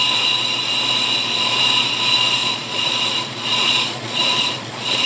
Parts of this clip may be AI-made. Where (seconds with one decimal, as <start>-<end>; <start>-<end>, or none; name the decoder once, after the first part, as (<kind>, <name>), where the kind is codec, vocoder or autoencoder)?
2.4-5.1 (vocoder, Vocos)